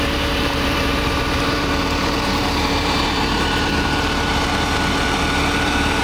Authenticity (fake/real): fake